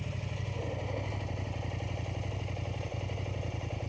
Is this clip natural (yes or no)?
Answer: yes